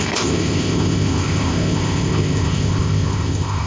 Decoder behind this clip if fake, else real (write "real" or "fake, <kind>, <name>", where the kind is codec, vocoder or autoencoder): fake, codec, ZipCodec